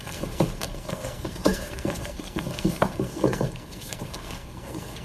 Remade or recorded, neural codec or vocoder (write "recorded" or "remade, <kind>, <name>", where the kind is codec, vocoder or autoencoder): remade, codec, SNAC